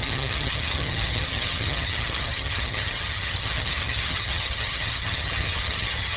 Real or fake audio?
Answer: fake